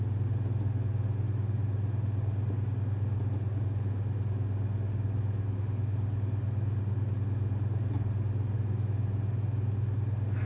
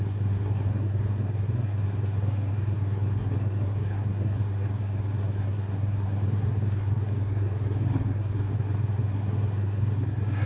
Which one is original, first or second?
first